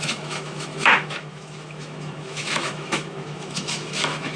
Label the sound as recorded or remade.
remade